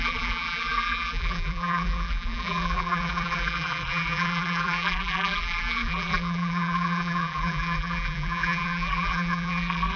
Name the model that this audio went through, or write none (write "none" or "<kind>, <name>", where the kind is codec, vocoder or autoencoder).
vocoder, BigVGAN v2